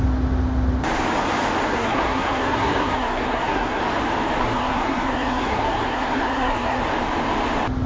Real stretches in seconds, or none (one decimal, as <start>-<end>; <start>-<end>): 0.0-1.7; 3.8-4.4; 6.8-7.9